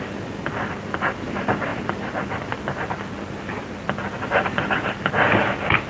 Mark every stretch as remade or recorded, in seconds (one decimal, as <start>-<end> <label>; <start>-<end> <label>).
0.0-5.9 recorded